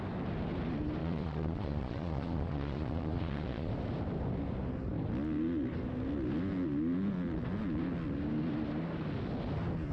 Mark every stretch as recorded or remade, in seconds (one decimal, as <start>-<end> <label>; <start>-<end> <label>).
0.0-1.0 recorded; 1.0-3.7 remade; 3.7-9.9 recorded